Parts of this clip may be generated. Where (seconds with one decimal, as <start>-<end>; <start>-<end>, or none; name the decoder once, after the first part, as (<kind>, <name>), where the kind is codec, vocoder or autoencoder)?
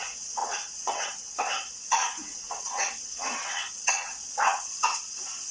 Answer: 0.0-5.5 (vocoder, WaveNeXt)